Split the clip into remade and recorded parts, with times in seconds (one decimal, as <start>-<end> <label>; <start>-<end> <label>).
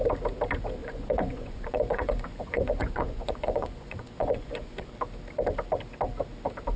0.0-0.8 recorded; 0.8-4.9 remade; 4.9-6.8 recorded